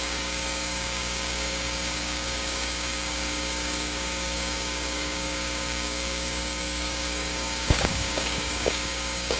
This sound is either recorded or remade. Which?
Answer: remade